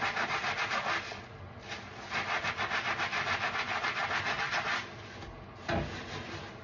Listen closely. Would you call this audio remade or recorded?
recorded